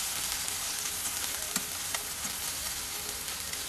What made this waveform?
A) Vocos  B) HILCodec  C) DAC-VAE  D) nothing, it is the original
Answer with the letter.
D